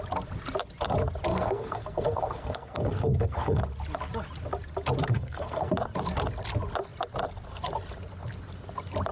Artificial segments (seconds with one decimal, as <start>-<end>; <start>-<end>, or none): 1.3-3.6; 5.0-5.7